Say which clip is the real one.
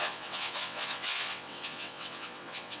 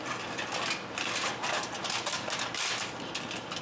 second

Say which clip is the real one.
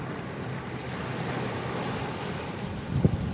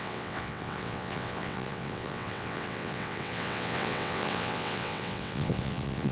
first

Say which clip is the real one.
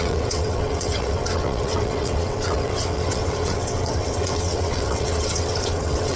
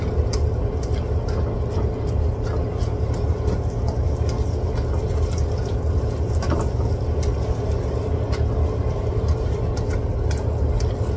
second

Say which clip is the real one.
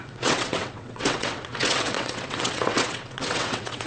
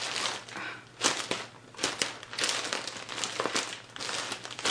second